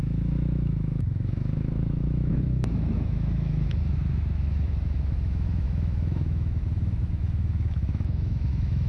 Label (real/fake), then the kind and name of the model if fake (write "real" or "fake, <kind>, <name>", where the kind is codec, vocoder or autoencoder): fake, autoencoder, DAC-VAE